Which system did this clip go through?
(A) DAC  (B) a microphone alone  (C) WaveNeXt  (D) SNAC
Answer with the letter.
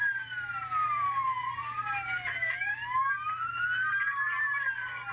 B